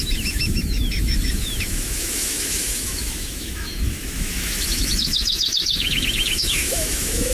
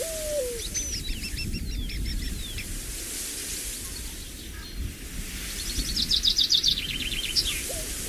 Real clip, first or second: second